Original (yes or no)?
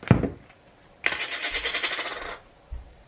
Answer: yes